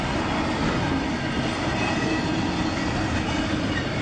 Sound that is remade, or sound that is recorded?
recorded